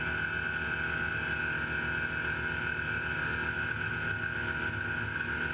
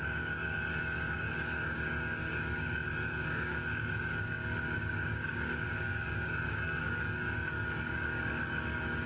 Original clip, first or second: first